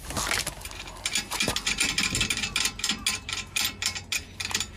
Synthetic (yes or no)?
no